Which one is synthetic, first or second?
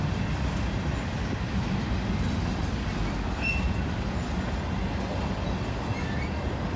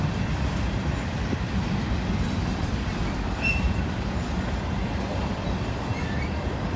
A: second